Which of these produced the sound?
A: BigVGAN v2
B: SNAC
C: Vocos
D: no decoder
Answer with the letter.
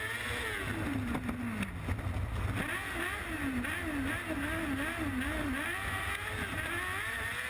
D